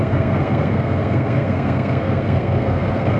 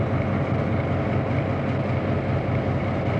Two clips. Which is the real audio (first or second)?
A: second